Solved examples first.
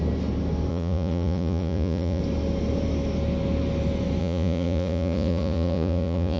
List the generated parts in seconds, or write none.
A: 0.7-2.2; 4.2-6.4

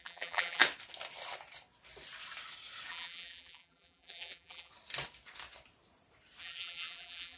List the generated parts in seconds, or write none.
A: 0.0-0.6; 2.9-4.7; 6.4-7.4

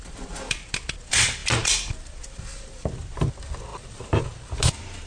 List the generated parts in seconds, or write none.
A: none

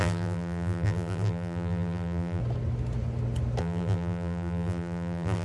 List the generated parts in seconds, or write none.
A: 0.0-2.4; 3.6-5.4

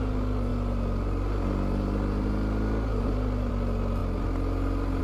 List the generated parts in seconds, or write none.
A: none

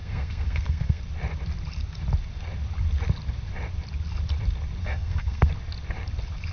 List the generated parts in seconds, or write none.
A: 0.0-1.0; 4.8-5.5